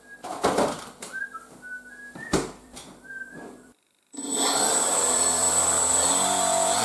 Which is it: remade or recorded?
remade